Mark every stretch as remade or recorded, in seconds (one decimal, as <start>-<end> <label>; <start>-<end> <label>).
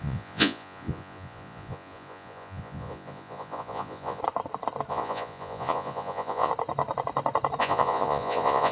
0.0-4.2 remade; 4.2-4.9 recorded; 4.9-6.5 remade; 6.5-7.6 recorded; 7.6-8.7 remade